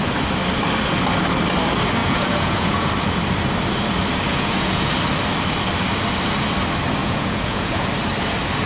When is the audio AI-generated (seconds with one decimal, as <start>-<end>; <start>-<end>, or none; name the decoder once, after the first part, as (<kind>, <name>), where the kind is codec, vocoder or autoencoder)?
2.0-2.9 (vocoder, Vocos); 4.3-4.9; 7.0-7.9